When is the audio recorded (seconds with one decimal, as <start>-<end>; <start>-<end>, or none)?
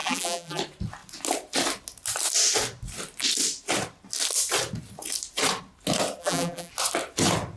0.6-6.2; 6.7-7.6